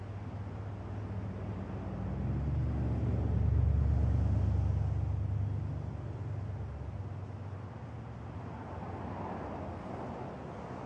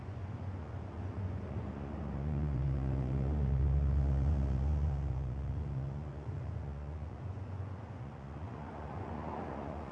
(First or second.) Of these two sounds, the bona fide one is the first